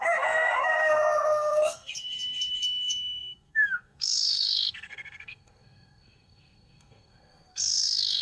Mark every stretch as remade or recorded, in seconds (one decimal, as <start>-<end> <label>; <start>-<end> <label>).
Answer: 0.0-8.2 remade